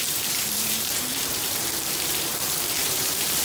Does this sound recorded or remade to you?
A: remade